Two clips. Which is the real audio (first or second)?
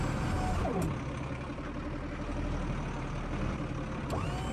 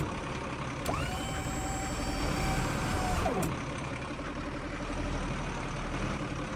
first